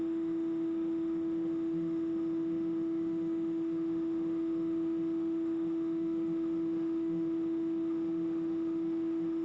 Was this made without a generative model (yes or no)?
no